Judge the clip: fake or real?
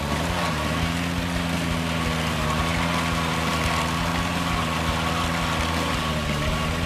real